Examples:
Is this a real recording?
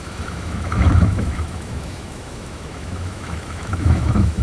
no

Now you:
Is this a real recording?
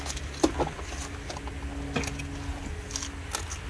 yes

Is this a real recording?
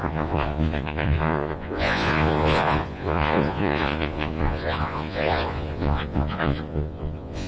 no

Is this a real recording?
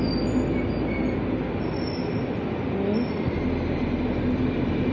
yes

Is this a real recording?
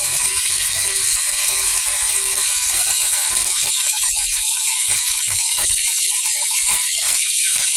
no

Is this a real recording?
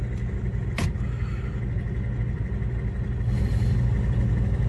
yes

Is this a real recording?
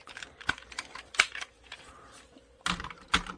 yes